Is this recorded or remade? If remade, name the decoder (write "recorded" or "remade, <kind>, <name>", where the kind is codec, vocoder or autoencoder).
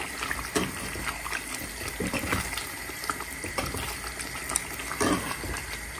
recorded